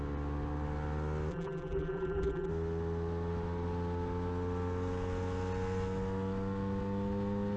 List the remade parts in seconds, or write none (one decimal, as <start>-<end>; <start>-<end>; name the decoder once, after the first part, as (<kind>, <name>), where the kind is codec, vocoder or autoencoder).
1.3-2.5 (vocoder, BigVGAN v2)